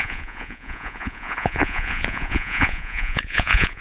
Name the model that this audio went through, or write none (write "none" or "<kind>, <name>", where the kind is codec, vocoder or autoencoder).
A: vocoder, Vocos